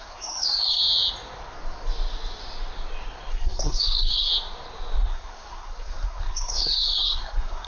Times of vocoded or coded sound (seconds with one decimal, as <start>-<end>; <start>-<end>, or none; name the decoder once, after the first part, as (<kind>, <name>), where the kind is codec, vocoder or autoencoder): 0.0-0.8 (codec, SNAC); 3.3-4.3; 5.1-7.7